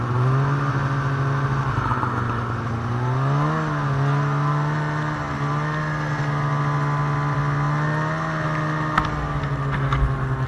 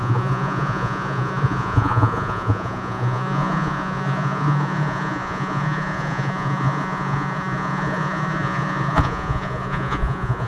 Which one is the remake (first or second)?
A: second